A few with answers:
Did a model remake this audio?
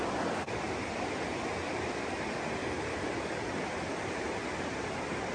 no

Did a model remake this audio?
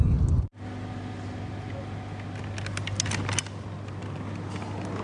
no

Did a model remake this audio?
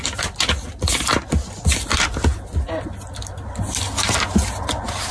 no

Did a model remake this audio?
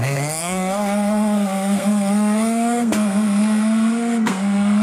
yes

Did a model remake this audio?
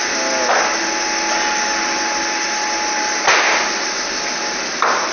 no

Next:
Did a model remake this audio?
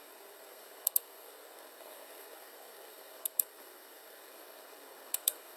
yes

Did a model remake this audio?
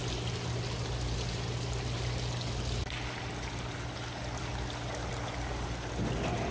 no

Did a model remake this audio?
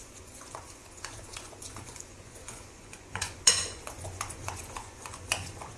yes